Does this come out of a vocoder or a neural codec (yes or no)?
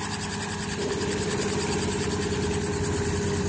no